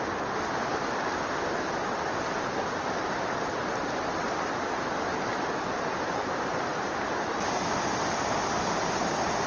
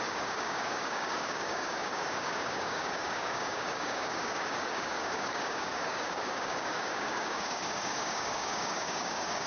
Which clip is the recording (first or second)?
first